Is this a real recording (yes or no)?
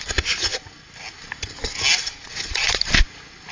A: yes